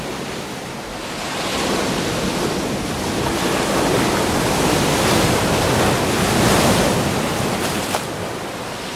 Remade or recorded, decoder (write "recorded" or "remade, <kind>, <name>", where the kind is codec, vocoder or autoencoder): recorded